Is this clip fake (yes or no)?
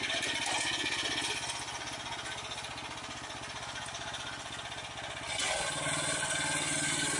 no